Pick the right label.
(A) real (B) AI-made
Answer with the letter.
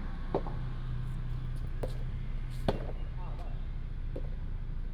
A